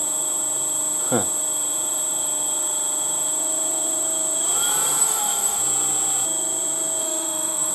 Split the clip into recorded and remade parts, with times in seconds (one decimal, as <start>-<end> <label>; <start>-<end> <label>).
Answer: 0.0-5.0 recorded; 5.0-5.6 remade; 5.6-7.0 recorded; 7.0-7.7 remade